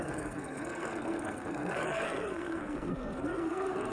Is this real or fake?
fake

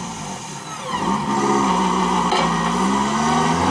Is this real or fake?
real